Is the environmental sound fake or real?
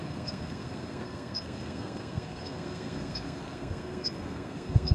fake